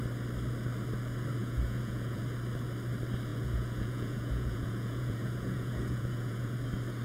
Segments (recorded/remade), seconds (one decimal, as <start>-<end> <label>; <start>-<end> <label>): 0.0-1.4 recorded; 1.4-2.2 remade; 2.2-3.3 recorded; 3.3-6.5 remade; 6.5-7.0 recorded

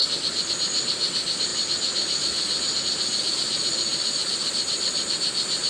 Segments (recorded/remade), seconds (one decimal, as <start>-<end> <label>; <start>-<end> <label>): 0.0-0.5 remade; 0.5-3.9 recorded; 3.9-4.6 remade; 4.6-5.7 recorded

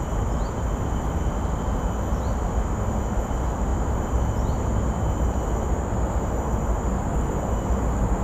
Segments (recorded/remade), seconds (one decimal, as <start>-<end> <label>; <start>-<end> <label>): 0.0-8.2 recorded